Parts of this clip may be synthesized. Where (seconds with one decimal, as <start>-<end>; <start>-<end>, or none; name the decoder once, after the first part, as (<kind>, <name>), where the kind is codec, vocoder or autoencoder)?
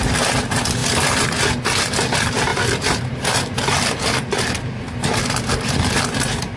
0.8-1.3 (vocoder, BigVGAN v2); 2.5-6.6